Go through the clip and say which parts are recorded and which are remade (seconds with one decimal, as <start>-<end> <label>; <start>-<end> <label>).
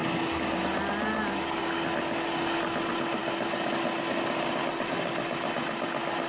0.0-6.3 recorded